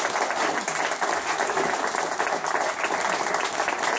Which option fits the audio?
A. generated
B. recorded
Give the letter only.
B